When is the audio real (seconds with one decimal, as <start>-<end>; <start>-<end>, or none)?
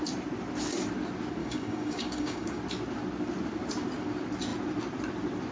0.0-1.4; 2.6-5.5